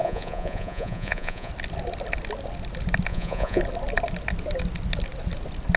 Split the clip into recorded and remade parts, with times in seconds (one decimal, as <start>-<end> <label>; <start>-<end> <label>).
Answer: 0.0-1.5 remade; 1.5-3.1 recorded; 3.1-3.6 remade; 3.6-5.8 recorded